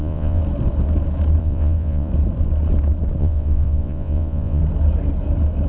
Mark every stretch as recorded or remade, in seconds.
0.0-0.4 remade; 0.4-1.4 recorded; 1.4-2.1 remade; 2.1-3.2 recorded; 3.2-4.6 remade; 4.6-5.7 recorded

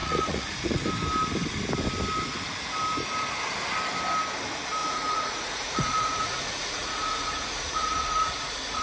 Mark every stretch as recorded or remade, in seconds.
0.0-0.9 remade; 0.9-4.8 recorded; 4.8-8.8 remade

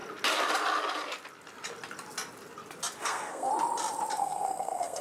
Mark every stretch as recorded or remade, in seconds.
0.0-3.0 recorded; 3.0-3.5 remade; 3.5-4.2 recorded; 4.2-5.0 remade

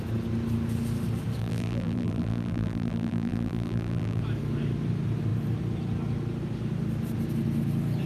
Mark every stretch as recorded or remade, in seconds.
0.0-1.4 recorded; 1.4-4.2 remade; 4.2-8.1 recorded

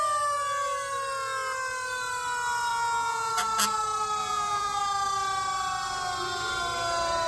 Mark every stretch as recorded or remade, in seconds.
0.0-2.7 recorded; 2.7-3.3 remade; 3.3-4.2 recorded; 4.2-4.8 remade; 4.8-7.3 recorded

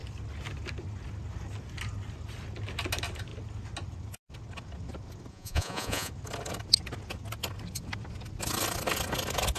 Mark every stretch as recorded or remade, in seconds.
0.0-5.3 recorded; 5.3-6.1 remade; 6.1-9.6 recorded

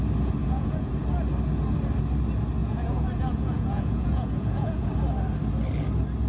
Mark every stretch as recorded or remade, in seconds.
0.0-0.4 recorded; 0.4-0.9 remade; 0.9-2.6 recorded; 2.6-4.9 remade; 4.9-6.3 recorded